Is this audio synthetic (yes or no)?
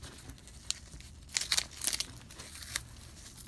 no